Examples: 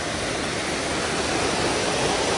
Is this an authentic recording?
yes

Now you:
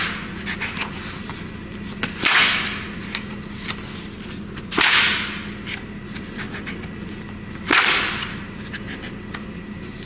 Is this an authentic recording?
yes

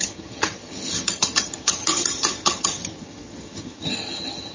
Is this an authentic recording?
no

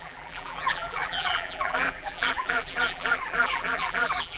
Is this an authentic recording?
no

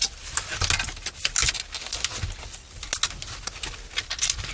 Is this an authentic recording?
yes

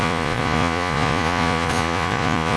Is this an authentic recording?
no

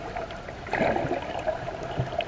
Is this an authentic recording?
yes